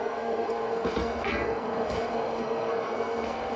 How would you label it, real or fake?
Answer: fake